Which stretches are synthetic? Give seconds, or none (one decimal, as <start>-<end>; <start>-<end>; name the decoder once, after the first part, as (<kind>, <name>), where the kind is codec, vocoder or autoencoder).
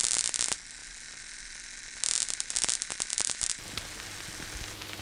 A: 3.1-3.6 (vocoder, BigVGAN v2)